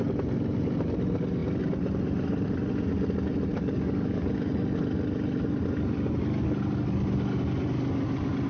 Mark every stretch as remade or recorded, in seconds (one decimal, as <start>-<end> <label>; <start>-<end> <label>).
0.0-3.5 recorded; 3.5-4.3 remade; 4.3-8.5 recorded